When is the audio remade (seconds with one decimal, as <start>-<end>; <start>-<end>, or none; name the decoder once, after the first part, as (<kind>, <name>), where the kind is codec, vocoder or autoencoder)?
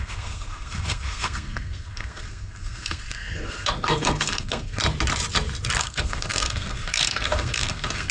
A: 0.0-4.8 (codec, SNAC); 5.8-8.1